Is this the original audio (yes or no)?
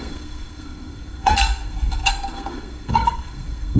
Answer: no